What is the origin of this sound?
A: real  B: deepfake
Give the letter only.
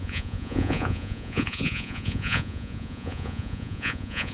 B